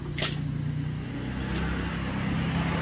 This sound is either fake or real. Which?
real